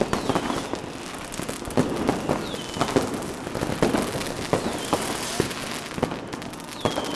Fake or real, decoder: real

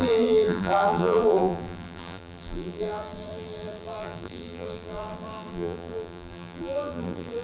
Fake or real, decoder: fake, vocoder, BigVGAN v2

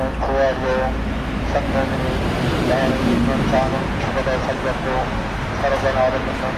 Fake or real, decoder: real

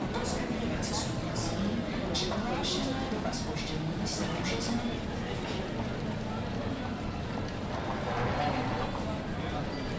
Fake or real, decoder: real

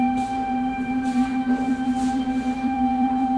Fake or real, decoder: fake, vocoder, BigVGAN v2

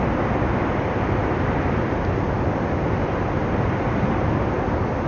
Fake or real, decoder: real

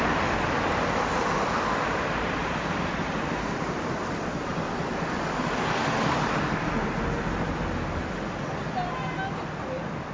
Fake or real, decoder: real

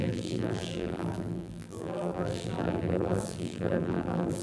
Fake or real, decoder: fake, vocoder, BigVGAN v2